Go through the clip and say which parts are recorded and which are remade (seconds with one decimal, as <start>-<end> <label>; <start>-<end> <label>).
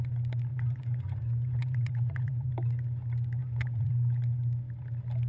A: 0.0-0.5 recorded; 0.5-2.5 remade; 2.5-3.4 recorded; 3.4-3.9 remade; 3.9-5.3 recorded